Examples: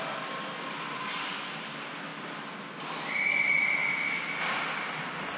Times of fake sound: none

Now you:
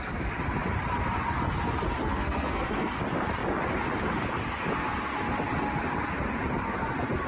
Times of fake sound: 2.0-2.9 (codec, SNAC)

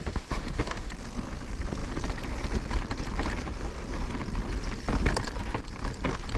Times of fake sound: 0.0-0.9 (autoencoder, DAC-VAE)

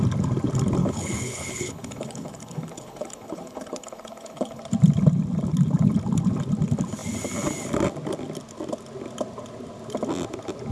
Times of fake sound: 0.8-4.6 (codec, HILCodec)

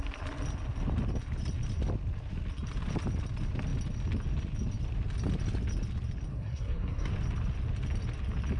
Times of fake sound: 6.3-7.1 (codec, SNAC)

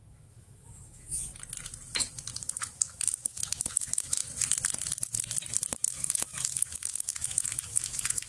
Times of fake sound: 0.0-1.3 (autoencoder, DAC-VAE); 2.5-4.2; 5.9-8.3